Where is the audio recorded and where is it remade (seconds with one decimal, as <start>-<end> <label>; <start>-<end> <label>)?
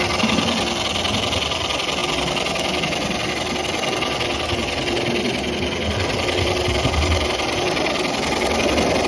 0.0-9.1 recorded